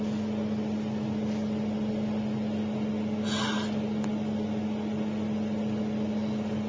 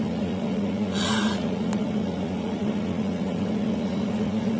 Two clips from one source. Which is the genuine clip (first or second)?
first